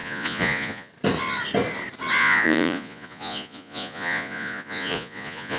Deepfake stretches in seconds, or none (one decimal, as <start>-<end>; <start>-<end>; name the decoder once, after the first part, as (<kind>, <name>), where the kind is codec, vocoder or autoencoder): 0.0-0.9 (vocoder, Vocos); 2.2-5.6

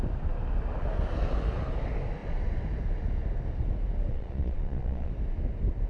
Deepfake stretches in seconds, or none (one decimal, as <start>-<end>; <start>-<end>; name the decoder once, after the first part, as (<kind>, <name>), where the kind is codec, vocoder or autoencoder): 4.1-5.1 (vocoder, Vocos)

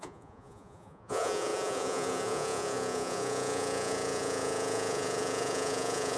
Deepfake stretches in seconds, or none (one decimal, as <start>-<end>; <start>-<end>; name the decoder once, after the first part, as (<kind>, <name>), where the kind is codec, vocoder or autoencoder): 0.0-6.2 (vocoder, Vocos)

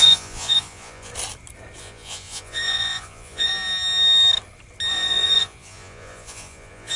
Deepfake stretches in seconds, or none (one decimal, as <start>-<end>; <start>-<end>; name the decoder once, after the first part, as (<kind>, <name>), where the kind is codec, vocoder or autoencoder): 0.0-1.1 (vocoder, Vocos); 1.8-3.5; 4.9-7.0

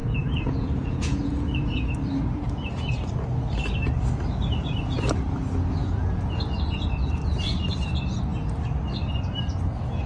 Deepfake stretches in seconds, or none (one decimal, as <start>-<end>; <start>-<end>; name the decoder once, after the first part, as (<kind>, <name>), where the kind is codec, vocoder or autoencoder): 0.0-1.9 (vocoder, Vocos); 5.8-6.4